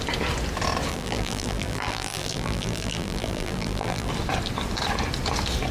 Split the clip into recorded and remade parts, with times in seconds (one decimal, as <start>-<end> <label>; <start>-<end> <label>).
0.0-0.9 recorded; 0.9-4.1 remade; 4.1-5.7 recorded